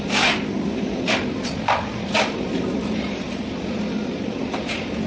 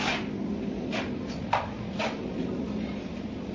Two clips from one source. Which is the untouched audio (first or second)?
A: second